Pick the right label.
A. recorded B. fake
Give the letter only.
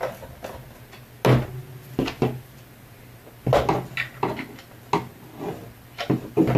A